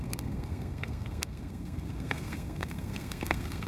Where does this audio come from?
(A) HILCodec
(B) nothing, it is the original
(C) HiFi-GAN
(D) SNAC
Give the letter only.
D